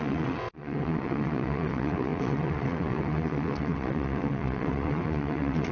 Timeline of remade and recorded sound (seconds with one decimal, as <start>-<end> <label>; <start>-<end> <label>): 0.0-5.7 remade